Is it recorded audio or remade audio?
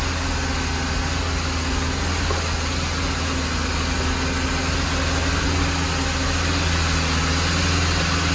recorded